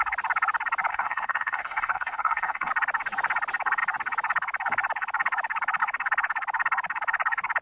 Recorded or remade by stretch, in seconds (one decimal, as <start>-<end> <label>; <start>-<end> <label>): 0.0-0.9 recorded; 0.9-2.7 remade; 2.7-7.6 recorded